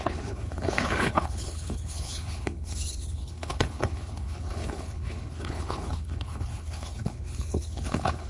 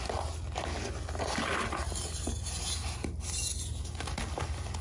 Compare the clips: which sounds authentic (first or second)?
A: second